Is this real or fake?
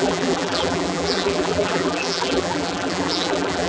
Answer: fake